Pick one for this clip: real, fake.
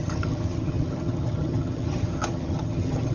fake